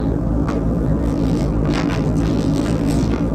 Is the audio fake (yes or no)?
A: yes